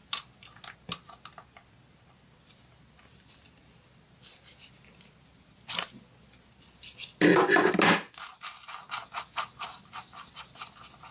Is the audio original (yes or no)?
yes